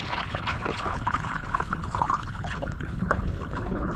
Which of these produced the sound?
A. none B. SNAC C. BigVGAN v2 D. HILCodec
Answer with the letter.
D